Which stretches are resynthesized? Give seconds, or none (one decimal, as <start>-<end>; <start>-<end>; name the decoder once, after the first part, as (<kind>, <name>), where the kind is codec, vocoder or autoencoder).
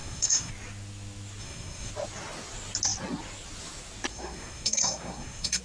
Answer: 0.0-0.5 (codec, SNAC); 1.4-1.9; 4.1-5.6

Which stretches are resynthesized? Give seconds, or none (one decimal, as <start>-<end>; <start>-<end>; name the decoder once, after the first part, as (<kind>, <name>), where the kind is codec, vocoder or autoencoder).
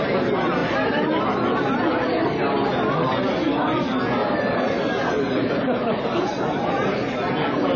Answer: 0.6-1.2 (vocoder, BigVGAN v2); 4.2-7.3